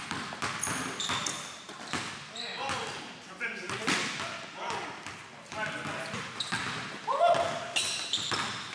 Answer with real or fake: real